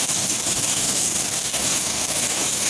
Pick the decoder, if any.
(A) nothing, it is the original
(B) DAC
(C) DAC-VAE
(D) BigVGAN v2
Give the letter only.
B